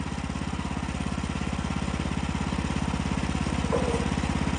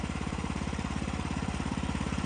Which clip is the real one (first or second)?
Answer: first